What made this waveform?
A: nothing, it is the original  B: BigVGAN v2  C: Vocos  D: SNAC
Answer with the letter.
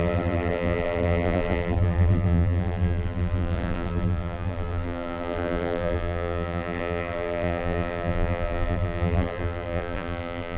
B